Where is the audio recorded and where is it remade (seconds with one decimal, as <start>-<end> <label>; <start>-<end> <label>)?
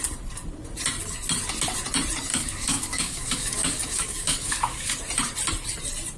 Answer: 0.0-2.3 recorded; 2.3-4.9 remade; 4.9-6.2 recorded